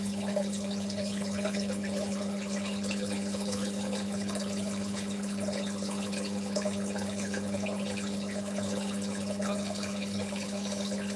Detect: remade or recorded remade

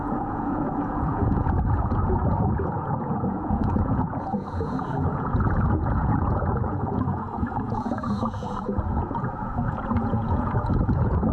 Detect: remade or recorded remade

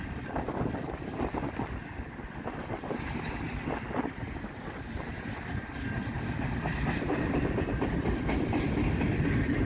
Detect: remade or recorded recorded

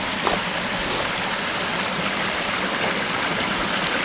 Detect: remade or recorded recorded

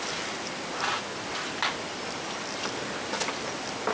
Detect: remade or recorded recorded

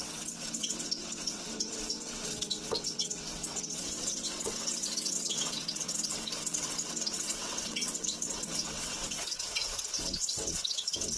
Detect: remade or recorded remade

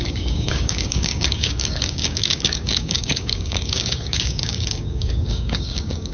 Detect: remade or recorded remade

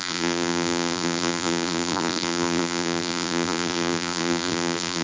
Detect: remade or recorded remade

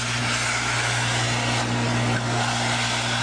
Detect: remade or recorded recorded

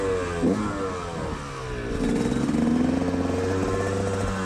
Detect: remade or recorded recorded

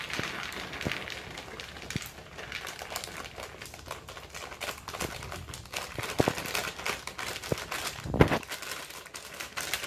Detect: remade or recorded recorded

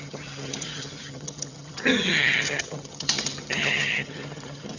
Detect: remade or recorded remade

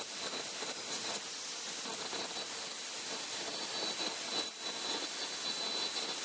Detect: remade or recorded recorded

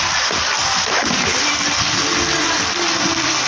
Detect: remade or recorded recorded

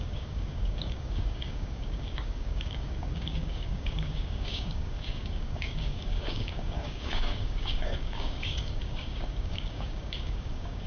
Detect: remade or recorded remade